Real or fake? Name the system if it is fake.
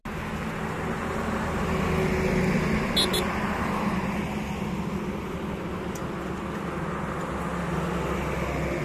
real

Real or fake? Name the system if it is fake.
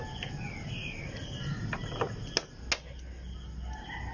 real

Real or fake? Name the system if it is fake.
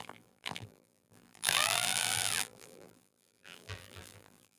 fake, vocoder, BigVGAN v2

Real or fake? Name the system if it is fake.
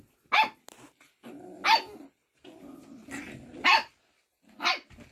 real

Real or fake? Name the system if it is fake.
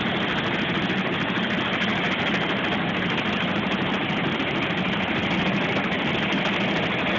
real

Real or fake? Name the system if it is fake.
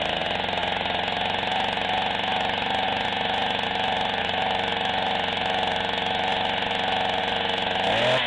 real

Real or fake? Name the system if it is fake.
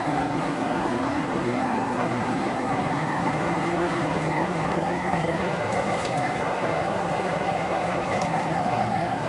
fake, codec, SNAC